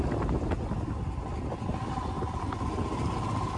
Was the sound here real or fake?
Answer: real